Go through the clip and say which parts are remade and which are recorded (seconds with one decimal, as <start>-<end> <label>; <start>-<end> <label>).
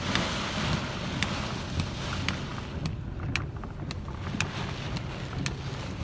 0.0-6.0 recorded